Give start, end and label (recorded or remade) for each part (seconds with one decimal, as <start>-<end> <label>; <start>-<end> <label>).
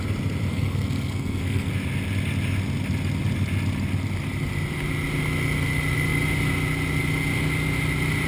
0.0-0.5 recorded; 0.5-1.7 remade; 1.7-8.3 recorded